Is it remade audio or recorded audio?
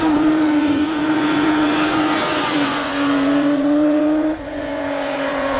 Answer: remade